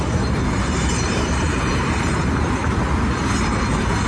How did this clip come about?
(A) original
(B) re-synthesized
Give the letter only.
B